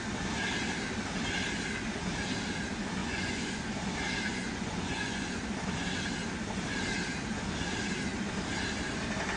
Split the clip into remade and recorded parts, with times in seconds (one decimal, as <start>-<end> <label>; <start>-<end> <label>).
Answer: 0.0-3.0 recorded; 3.0-3.7 remade; 3.7-4.3 recorded; 4.3-5.4 remade; 5.4-9.4 recorded